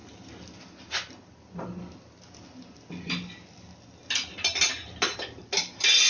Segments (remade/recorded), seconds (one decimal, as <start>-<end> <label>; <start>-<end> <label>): 0.0-6.1 recorded